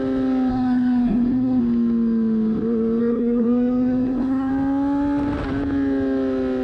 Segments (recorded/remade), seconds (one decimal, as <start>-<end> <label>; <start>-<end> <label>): 0.0-0.5 recorded; 0.5-1.6 remade; 1.6-3.0 recorded; 3.0-4.5 remade; 4.5-6.6 recorded